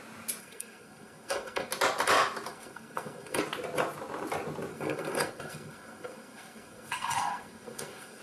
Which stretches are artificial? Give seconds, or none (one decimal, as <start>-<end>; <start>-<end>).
0.4-1.7; 2.5-3.4; 4.7-8.2